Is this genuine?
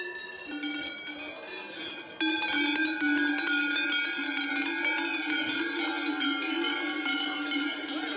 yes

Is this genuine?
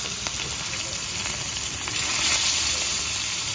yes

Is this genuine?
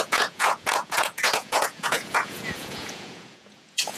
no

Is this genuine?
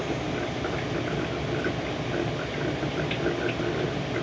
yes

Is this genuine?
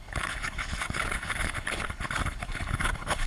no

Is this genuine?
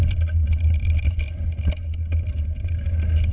yes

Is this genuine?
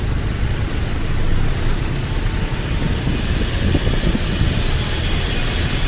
yes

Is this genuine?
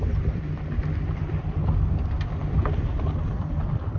no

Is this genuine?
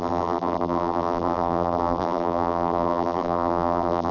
no